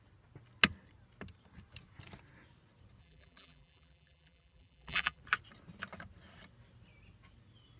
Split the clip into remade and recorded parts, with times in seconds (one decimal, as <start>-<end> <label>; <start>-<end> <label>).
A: 0.0-3.0 recorded; 3.0-5.2 remade; 5.2-7.8 recorded